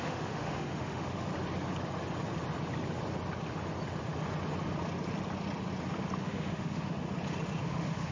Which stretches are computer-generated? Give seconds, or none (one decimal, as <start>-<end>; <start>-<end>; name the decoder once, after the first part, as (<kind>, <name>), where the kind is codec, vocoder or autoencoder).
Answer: 0.0-1.3 (autoencoder, DAC-VAE); 6.2-7.0; 7.6-8.1